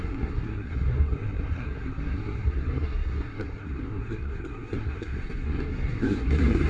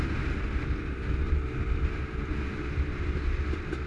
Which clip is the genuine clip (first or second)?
second